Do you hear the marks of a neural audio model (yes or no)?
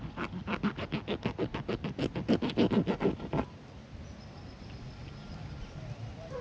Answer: no